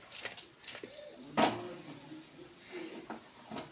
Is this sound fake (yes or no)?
no